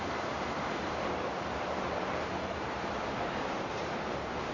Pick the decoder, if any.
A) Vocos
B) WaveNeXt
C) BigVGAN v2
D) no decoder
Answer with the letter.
C